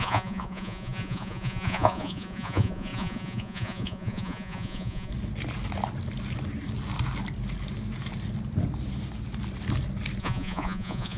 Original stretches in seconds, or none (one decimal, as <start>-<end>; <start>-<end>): 5.1-10.2